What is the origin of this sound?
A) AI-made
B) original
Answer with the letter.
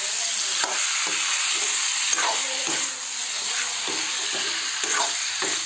B